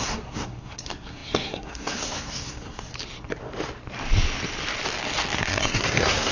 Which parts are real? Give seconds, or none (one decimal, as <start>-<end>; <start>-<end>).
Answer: 2.9-5.4